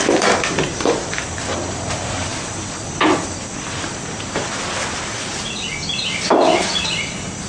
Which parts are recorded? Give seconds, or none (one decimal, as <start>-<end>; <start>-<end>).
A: 0.0-7.5